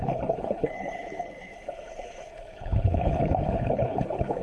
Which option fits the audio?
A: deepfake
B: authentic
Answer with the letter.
A